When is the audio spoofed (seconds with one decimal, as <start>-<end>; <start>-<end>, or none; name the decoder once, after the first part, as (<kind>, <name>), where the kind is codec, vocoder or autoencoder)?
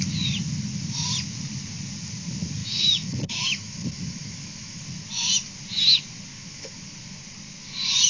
2.6-4.8 (autoencoder, DAC-VAE); 6.3-6.9